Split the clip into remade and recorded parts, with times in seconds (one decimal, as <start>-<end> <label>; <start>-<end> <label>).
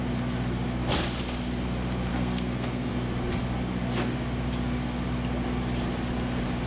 0.0-2.1 recorded; 2.1-2.9 remade; 2.9-6.7 recorded